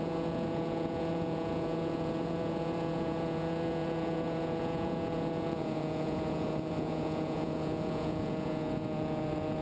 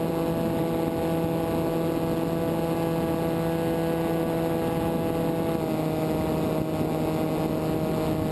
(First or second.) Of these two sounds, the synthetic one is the first